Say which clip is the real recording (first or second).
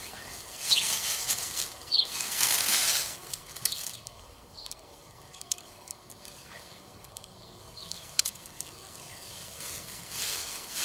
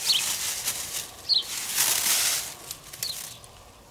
second